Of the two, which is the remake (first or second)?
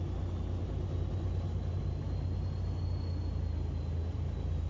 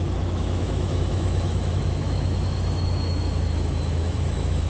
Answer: second